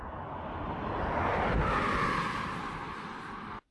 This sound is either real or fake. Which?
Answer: real